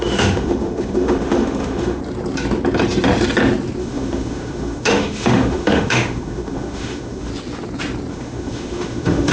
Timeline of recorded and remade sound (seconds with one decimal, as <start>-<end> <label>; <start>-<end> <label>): 0.0-2.0 remade; 2.0-3.8 recorded; 3.8-7.3 remade; 7.3-8.1 recorded; 8.1-9.3 remade